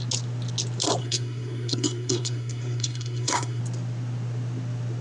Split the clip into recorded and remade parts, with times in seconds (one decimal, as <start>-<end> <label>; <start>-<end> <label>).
0.0-1.0 recorded; 1.0-3.6 remade; 3.6-5.0 recorded